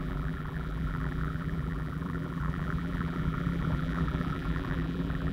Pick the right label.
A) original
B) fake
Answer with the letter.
B